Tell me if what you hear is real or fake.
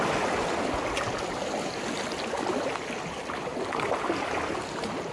real